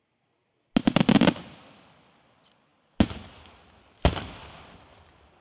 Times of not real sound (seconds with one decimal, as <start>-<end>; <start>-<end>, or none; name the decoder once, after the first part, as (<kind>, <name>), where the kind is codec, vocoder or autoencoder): none